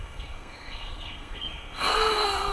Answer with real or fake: fake